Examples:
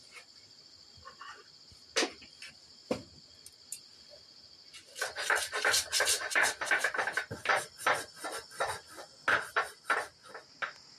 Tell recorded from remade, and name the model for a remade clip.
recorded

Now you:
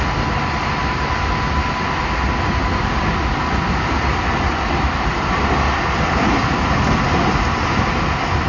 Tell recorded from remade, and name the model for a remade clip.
recorded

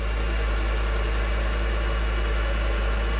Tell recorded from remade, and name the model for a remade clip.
recorded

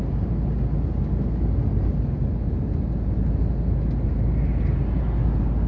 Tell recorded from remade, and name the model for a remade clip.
recorded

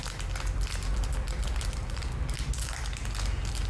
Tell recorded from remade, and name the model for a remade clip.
recorded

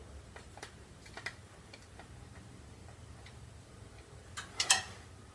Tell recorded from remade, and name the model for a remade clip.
recorded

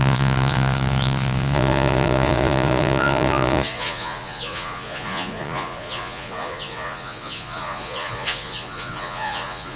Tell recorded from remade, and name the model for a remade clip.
remade, vocoder, Vocos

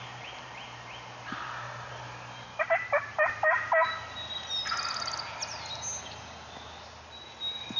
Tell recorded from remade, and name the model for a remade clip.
recorded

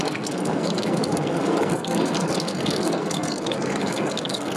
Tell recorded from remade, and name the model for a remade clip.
remade, codec, SNAC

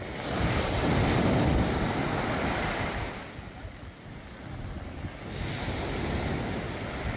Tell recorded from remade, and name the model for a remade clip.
recorded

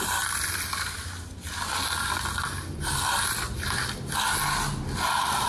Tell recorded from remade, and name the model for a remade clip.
recorded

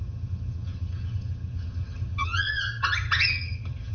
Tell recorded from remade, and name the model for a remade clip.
remade, vocoder, HiFi-GAN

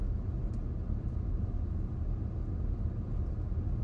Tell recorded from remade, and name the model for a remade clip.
recorded